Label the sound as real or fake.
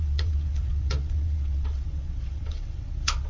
fake